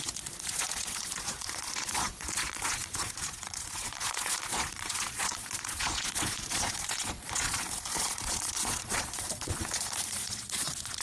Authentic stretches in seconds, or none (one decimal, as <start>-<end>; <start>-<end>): none